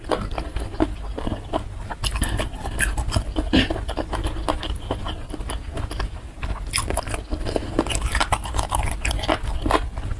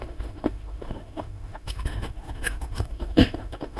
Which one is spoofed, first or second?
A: second